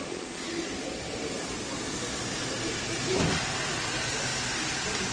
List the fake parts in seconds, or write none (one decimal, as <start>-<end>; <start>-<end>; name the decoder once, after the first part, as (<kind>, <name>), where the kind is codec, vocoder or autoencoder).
0.0-0.5 (vocoder, Vocos)